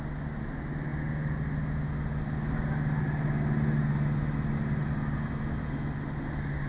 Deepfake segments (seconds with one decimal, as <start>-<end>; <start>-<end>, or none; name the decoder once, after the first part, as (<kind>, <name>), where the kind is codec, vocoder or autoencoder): none